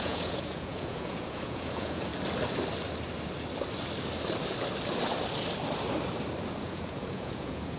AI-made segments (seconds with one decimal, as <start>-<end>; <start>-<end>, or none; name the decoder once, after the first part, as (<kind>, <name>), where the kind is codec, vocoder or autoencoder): 0.0-2.1 (vocoder, Vocos); 6.6-7.8